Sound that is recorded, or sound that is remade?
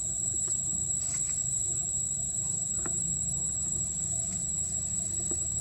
remade